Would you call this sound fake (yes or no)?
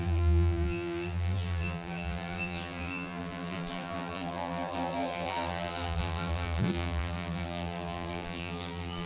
yes